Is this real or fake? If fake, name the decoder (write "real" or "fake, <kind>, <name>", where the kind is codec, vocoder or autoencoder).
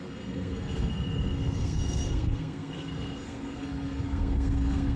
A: fake, codec, SNAC